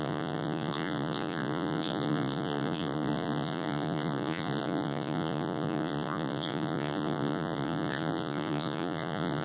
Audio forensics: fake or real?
fake